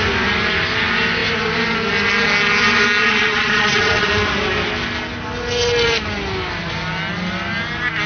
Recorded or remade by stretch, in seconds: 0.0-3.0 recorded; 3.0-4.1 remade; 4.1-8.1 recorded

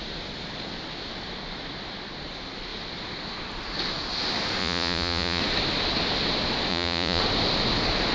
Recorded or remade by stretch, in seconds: 0.0-4.6 recorded; 4.6-5.4 remade; 5.4-6.7 recorded; 6.7-7.2 remade; 7.2-8.1 recorded

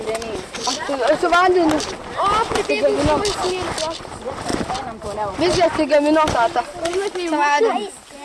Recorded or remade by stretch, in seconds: 0.0-8.2 recorded

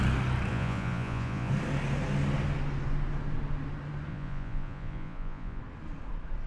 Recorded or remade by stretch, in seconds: 0.0-0.5 recorded; 0.5-1.5 remade; 1.5-4.1 recorded; 4.1-5.6 remade; 5.6-6.5 recorded

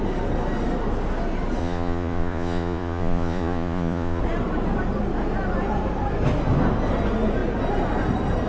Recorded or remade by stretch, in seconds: 0.0-1.6 recorded; 1.6-4.2 remade; 4.2-8.5 recorded

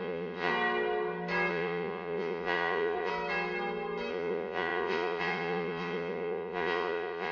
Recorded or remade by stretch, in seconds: 0.0-0.5 remade; 0.5-1.5 recorded; 1.5-3.1 remade; 3.1-4.1 recorded; 4.1-7.3 remade

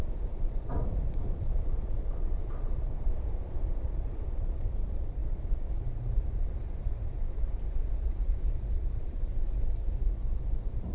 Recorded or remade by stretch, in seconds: 0.0-3.1 remade; 3.1-3.7 recorded; 3.7-10.9 remade